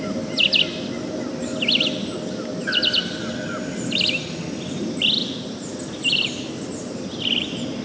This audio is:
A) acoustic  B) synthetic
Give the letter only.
A